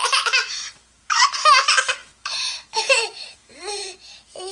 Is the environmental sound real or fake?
fake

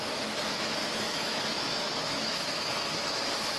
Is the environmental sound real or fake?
fake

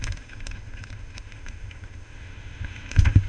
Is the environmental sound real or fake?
fake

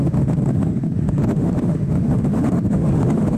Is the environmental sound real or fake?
fake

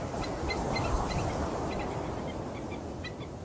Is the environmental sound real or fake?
real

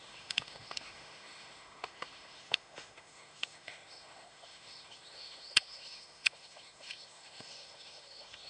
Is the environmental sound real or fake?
fake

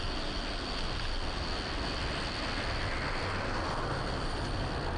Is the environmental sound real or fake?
real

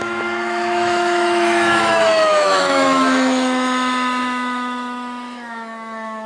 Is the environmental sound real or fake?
fake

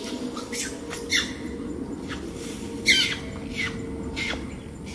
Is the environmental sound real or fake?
real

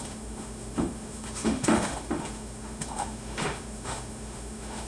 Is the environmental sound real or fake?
fake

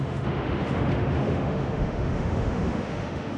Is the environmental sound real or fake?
fake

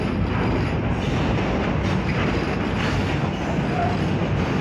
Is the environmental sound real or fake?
real